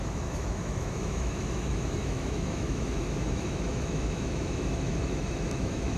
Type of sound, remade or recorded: remade